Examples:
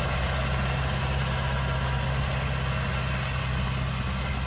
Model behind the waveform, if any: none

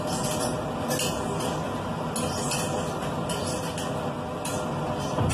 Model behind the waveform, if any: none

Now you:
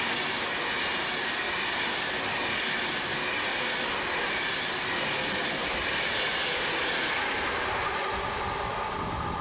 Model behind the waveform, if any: none